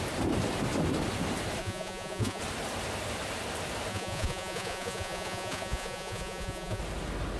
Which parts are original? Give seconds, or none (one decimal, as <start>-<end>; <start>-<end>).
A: 0.0-1.6; 2.4-3.9; 6.8-7.4